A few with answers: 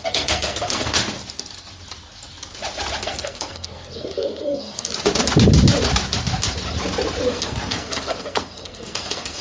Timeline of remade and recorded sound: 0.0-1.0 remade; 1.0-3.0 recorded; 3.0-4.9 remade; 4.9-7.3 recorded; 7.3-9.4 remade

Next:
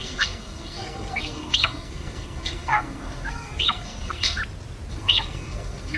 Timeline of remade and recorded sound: 0.0-4.4 remade; 4.4-4.9 recorded; 4.9-6.0 remade

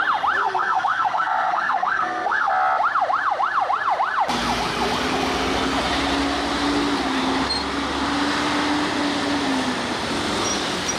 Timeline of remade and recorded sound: 0.0-0.4 recorded; 0.4-2.5 remade; 2.5-11.0 recorded

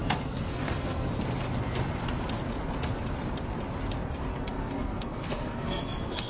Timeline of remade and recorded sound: 0.0-1.1 remade; 1.1-4.3 recorded; 4.3-6.3 remade